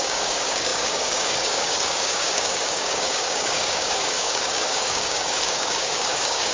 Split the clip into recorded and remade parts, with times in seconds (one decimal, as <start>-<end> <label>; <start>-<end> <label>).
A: 0.0-6.5 remade